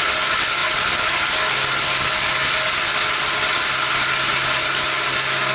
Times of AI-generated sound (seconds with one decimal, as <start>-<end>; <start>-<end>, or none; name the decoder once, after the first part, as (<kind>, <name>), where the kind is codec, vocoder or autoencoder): none